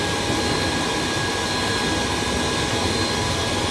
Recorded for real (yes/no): yes